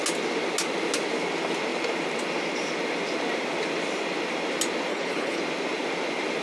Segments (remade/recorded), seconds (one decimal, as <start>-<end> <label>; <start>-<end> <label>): 0.0-4.9 recorded; 4.9-5.4 remade; 5.4-6.4 recorded